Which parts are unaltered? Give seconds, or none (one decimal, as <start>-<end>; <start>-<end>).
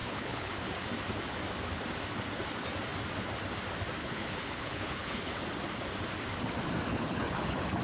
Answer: 0.6-4.0; 5.4-6.9